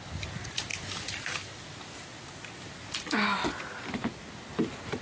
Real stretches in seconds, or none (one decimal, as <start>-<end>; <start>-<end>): 0.0-5.0